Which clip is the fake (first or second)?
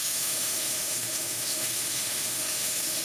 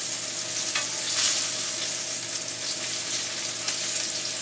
first